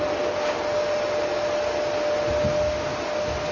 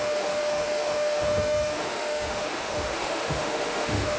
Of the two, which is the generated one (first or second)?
second